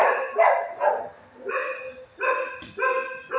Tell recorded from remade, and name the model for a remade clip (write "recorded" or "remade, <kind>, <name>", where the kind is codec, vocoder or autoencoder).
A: recorded